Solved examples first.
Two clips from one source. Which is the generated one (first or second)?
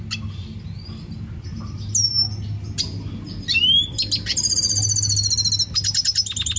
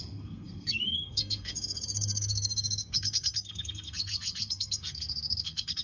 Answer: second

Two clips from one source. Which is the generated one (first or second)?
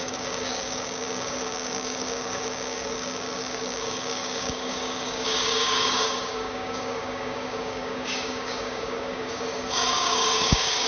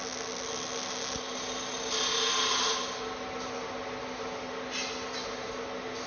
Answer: first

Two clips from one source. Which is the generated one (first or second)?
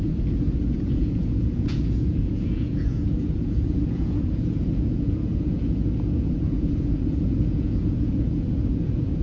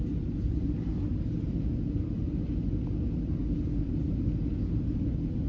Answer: first